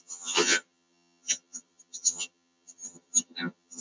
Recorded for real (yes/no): no